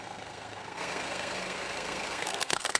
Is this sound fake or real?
fake